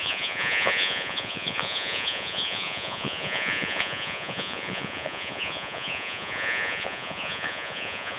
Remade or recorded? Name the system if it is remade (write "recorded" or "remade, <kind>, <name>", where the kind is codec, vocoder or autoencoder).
remade, vocoder, Vocos